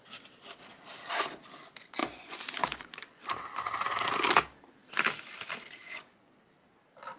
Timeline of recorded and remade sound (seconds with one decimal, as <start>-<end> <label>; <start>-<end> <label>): 0.0-2.0 recorded; 2.0-3.2 remade; 3.2-5.8 recorded; 5.8-6.4 remade; 6.4-7.2 recorded